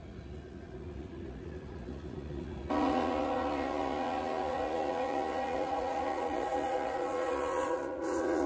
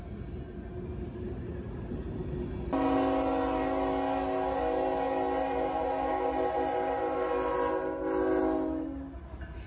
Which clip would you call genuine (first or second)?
second